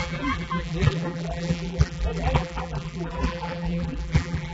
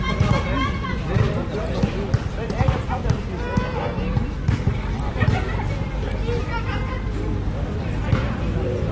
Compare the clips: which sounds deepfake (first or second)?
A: first